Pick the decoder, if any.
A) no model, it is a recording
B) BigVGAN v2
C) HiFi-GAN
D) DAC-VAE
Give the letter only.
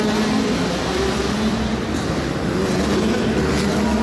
A